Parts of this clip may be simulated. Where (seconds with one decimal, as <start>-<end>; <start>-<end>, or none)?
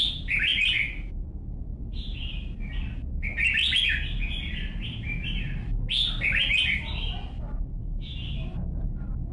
none